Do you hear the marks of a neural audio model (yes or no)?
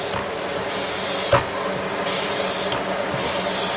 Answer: no